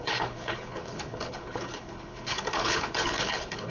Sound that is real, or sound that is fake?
fake